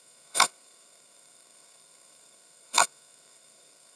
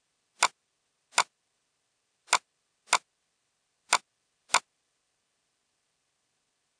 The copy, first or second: first